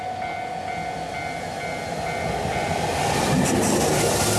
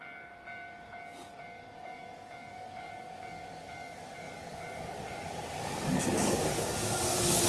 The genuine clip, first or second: first